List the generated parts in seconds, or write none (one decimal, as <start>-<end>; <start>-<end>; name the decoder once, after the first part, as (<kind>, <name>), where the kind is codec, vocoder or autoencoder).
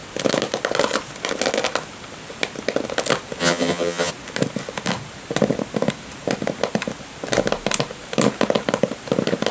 3.4-4.1 (vocoder, HiFi-GAN)